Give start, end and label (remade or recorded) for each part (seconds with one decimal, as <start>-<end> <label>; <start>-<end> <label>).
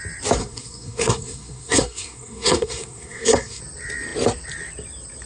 0.0-0.4 recorded; 0.4-3.6 remade; 3.6-5.3 recorded